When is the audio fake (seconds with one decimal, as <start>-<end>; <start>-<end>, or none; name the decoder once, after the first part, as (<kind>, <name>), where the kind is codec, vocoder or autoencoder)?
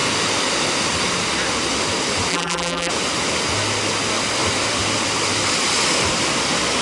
2.3-2.9 (vocoder, BigVGAN v2)